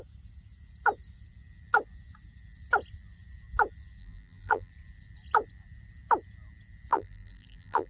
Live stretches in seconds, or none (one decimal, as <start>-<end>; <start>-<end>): 0.0-4.0; 4.7-6.9